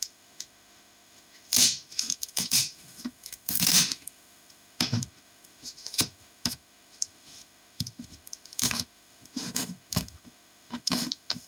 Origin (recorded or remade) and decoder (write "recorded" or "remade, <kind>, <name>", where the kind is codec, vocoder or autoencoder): remade, autoencoder, DAC-VAE